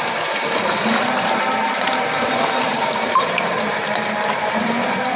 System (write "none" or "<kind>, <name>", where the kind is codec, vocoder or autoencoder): vocoder, BigVGAN v2